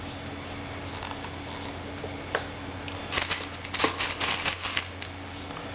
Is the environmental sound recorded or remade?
recorded